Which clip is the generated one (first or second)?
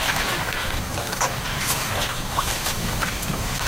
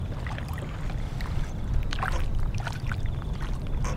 first